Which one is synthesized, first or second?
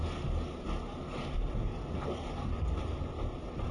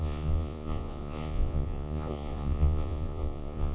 second